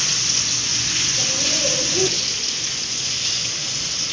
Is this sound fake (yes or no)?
yes